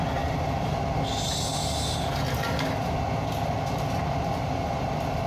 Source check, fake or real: real